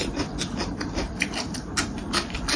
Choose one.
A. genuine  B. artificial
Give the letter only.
A